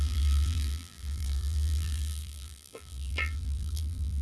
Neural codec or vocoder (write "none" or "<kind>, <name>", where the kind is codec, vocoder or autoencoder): vocoder, BigVGAN v2